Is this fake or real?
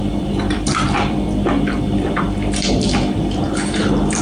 fake